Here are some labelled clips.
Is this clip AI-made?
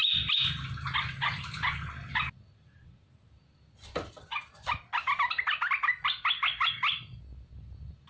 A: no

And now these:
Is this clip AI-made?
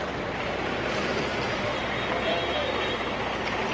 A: no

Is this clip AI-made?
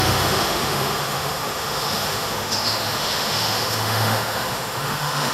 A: yes